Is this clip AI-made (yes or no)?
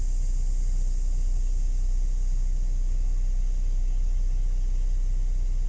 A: no